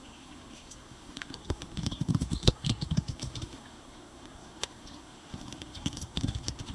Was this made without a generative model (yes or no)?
no